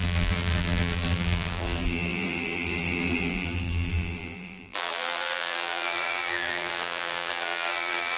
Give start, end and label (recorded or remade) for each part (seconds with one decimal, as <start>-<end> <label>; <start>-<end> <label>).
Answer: 0.0-8.2 remade